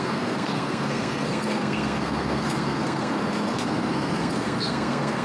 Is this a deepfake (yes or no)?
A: yes